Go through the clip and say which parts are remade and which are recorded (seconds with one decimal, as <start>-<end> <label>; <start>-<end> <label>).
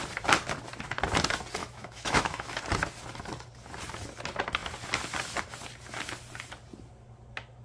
0.0-1.6 recorded; 1.6-2.6 remade; 2.6-7.6 recorded